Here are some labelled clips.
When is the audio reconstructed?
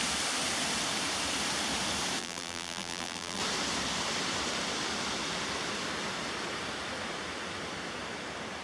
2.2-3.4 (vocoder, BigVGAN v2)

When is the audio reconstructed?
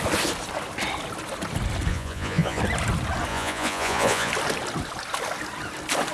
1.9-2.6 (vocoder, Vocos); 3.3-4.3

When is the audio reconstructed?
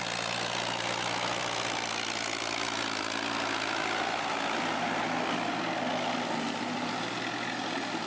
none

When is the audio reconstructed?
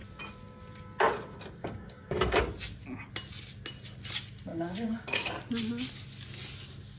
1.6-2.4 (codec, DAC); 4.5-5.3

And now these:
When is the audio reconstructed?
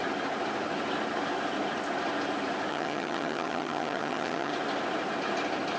2.7-4.5 (vocoder, HiFi-GAN)